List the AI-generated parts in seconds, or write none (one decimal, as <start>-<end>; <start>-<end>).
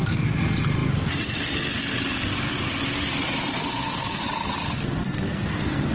3.5-4.2; 5.0-5.9